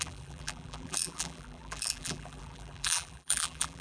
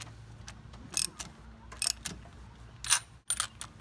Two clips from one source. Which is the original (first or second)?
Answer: second